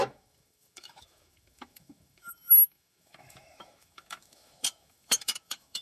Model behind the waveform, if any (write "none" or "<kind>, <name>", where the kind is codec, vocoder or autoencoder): autoencoder, DAC-VAE